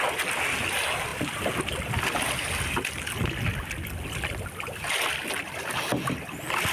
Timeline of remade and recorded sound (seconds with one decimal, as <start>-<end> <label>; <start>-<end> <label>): 0.0-6.7 recorded